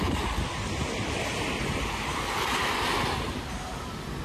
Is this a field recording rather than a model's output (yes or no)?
yes